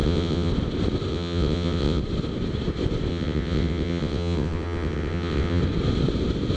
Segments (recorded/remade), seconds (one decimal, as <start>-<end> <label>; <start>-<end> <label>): 0.0-0.5 remade; 0.5-1.1 recorded; 1.1-2.0 remade; 2.0-3.1 recorded; 3.1-5.6 remade; 5.6-6.6 recorded